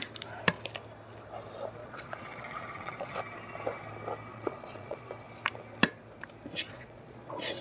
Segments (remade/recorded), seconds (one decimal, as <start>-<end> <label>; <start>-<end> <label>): 0.0-1.8 recorded; 1.8-3.2 remade; 3.2-4.3 recorded; 4.3-5.1 remade; 5.1-6.7 recorded; 6.7-7.6 remade